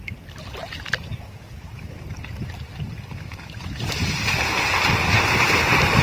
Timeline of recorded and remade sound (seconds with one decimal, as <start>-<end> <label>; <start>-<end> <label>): 0.0-6.0 recorded